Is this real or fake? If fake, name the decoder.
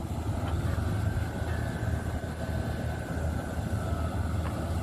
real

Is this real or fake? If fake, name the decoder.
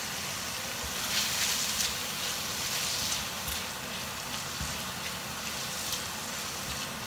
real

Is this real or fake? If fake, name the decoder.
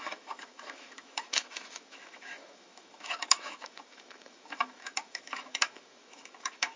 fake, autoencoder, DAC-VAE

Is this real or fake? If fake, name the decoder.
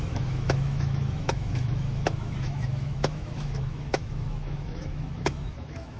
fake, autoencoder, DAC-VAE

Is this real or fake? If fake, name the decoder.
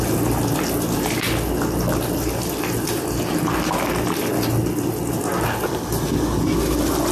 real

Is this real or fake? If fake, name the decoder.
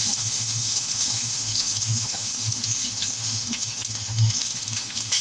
fake, autoencoder, DAC-VAE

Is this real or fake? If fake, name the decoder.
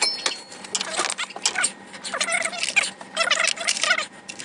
real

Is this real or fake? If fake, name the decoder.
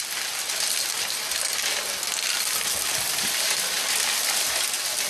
real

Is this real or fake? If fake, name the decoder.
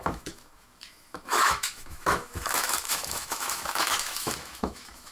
fake, autoencoder, DAC-VAE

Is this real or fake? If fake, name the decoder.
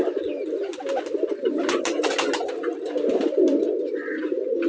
real